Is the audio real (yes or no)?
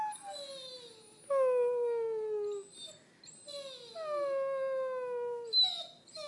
yes